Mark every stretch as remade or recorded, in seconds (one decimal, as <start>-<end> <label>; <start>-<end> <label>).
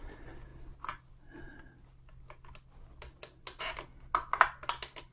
0.0-5.1 recorded